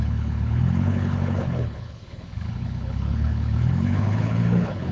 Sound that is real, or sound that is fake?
fake